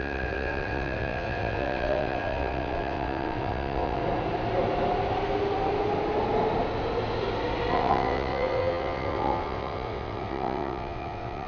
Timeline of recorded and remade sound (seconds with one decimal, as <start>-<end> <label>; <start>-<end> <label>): 0.0-4.0 remade; 4.0-7.7 recorded; 7.7-11.5 remade